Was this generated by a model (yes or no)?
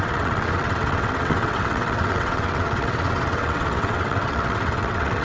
yes